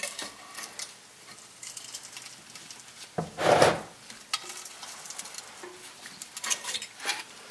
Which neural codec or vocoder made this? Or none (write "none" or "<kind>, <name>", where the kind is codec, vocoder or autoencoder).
vocoder, BigVGAN v2